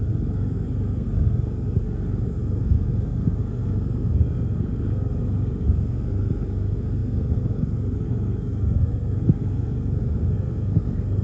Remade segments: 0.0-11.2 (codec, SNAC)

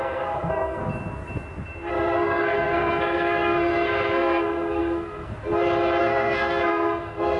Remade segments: 0.0-0.8 (codec, SNAC); 1.9-5.3; 6.0-7.4

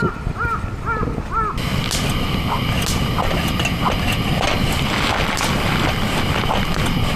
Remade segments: none

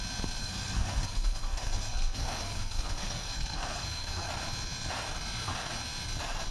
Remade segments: 0.4-4.3 (codec, SNAC)

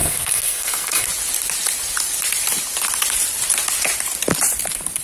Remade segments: 0.0-1.1 (codec, SNAC)

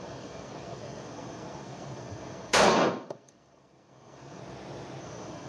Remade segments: 0.0-4.4 (codec, SNAC); 5.0-5.5

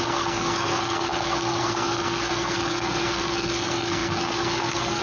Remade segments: 0.0-5.0 (codec, SNAC)

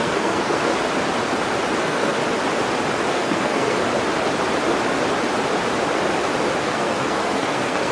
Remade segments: 0.0-0.7 (codec, SNAC); 1.8-2.2; 3.1-3.8; 6.6-7.9